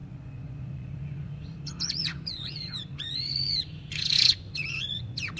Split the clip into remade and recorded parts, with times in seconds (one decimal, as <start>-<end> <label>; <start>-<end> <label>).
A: 0.0-5.4 remade